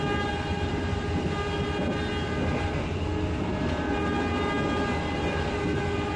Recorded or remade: recorded